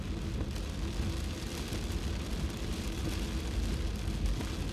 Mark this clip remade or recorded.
recorded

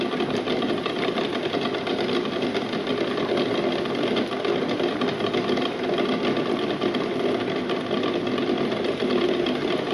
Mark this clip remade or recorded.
recorded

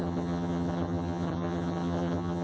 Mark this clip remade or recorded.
remade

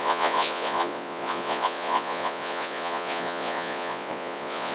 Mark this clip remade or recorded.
remade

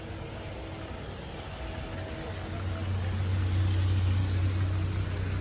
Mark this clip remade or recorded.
recorded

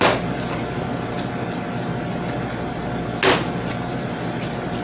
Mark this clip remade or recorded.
recorded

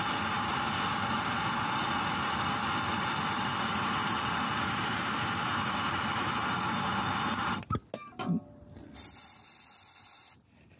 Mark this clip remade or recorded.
recorded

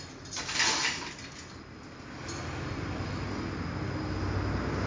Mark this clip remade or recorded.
recorded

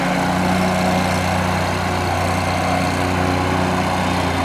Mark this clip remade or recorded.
recorded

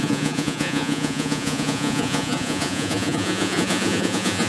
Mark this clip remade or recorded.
remade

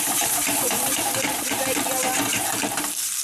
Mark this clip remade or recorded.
remade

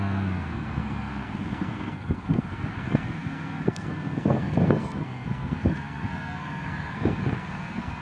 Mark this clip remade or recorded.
remade